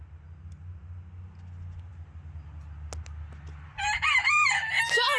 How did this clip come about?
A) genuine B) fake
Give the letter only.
A